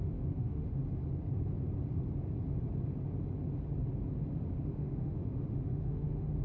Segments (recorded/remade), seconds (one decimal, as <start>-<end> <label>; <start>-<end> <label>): 0.0-0.8 remade; 0.8-4.6 recorded; 4.6-6.4 remade

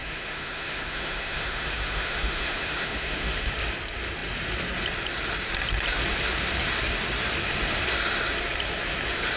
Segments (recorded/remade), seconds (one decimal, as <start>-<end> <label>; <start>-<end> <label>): 0.0-3.5 remade; 3.5-9.4 recorded

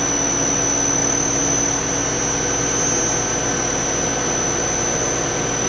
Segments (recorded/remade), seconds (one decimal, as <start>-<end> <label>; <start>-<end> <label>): 0.0-5.7 recorded

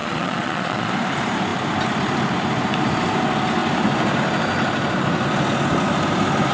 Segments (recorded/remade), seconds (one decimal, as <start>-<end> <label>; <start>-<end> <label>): 0.0-0.9 remade; 0.9-6.5 recorded

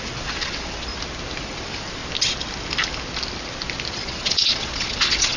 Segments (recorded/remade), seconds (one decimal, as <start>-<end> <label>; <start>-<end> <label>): 0.0-0.9 remade; 0.9-1.4 recorded; 1.4-2.0 remade; 2.0-3.9 recorded; 3.9-5.4 remade